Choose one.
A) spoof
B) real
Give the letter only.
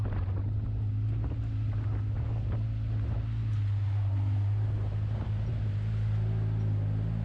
B